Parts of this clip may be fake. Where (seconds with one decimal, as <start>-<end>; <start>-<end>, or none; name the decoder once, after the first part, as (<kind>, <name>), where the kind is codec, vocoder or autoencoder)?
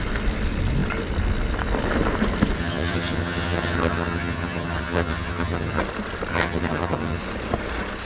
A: 2.6-5.8 (vocoder, HiFi-GAN); 6.3-7.2